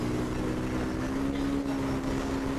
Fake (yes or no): no